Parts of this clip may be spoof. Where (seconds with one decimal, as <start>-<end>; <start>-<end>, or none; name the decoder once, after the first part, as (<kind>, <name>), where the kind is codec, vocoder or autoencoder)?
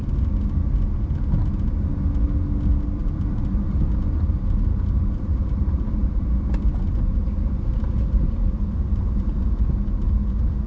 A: 3.0-4.2 (vocoder, BigVGAN v2); 5.3-9.0